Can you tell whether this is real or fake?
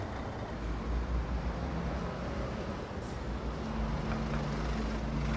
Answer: real